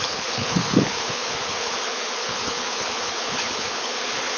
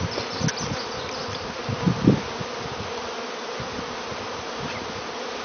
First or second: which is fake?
first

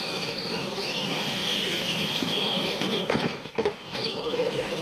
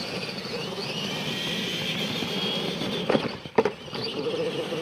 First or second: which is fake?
first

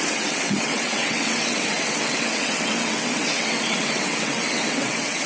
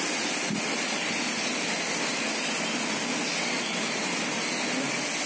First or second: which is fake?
first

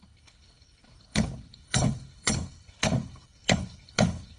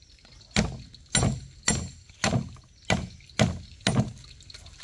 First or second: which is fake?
first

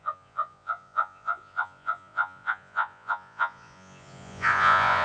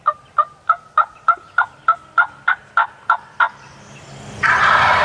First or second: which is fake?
first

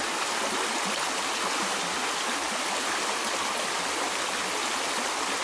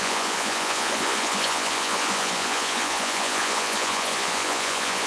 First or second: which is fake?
second